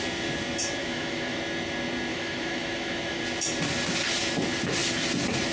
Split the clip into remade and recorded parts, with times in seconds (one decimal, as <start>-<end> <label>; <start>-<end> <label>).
0.0-0.8 recorded; 0.8-1.4 remade; 1.4-2.1 recorded; 2.1-3.2 remade; 3.2-5.5 recorded